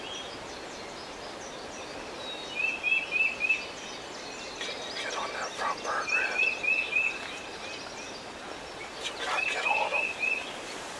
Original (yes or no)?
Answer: yes